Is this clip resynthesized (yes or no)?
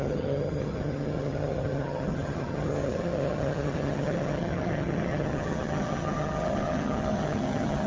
yes